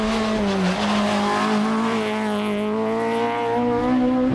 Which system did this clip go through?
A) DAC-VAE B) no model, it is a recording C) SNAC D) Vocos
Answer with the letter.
B